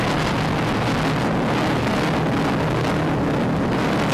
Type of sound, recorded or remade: recorded